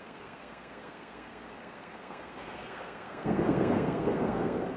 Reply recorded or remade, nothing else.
remade